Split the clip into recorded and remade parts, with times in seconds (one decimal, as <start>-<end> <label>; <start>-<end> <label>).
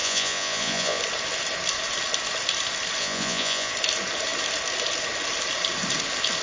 0.0-1.0 remade; 1.0-3.0 recorded; 3.0-3.7 remade; 3.7-6.4 recorded